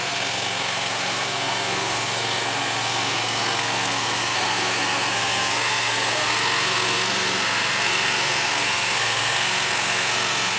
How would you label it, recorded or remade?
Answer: remade